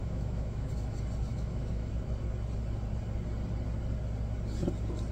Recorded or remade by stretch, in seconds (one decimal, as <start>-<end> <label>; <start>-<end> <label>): 0.0-0.7 remade; 0.7-1.3 recorded; 1.3-1.9 remade; 1.9-5.1 recorded